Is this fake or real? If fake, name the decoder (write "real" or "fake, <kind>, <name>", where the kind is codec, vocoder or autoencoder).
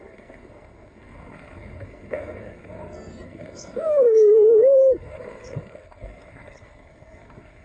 fake, codec, SNAC